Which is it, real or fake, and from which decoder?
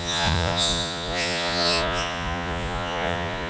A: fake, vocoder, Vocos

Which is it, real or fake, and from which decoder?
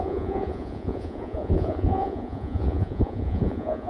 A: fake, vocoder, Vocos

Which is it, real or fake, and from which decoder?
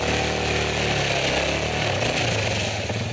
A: real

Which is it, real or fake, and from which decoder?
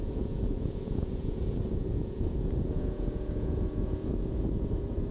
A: fake, vocoder, Vocos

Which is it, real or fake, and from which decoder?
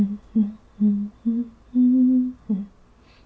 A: real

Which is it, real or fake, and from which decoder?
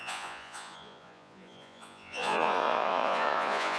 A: fake, vocoder, Vocos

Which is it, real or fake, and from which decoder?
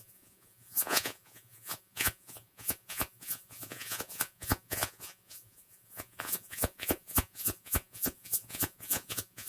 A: fake, vocoder, Vocos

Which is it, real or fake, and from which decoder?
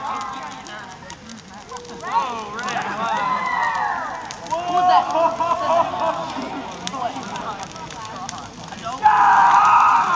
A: real